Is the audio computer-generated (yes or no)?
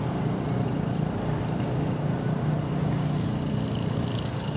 no